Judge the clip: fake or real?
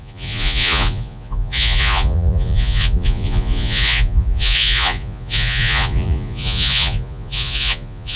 fake